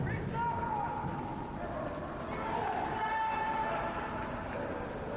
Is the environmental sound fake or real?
real